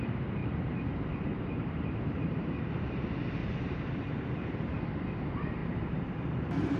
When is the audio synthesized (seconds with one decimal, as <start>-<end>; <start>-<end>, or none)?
0.4-2.5; 3.4-4.9; 5.6-6.1